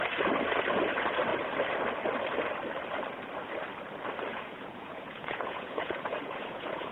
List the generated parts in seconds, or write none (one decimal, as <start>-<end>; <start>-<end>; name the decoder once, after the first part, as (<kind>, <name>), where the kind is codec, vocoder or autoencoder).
4.3-6.9 (vocoder, Vocos)